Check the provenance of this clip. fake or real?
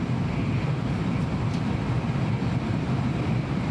fake